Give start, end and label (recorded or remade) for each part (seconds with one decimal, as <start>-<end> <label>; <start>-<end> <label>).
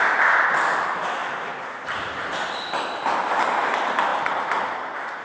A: 0.0-5.2 recorded